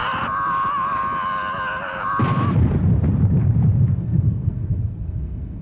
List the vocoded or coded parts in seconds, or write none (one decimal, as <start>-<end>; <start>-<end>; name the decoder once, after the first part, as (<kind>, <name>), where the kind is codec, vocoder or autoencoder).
4.0-5.6 (codec, SNAC)